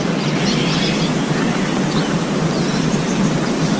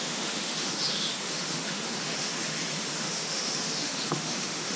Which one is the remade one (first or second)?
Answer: second